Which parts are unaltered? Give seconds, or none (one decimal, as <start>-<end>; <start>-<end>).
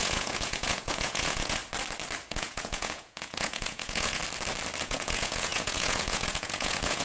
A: 1.6-2.3; 4.2-4.8